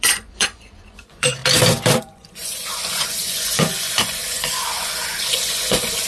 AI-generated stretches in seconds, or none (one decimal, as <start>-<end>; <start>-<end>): 0.0-1.4; 2.0-6.1